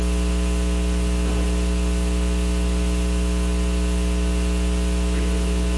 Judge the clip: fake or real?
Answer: real